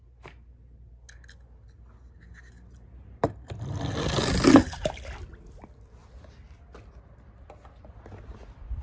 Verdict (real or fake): real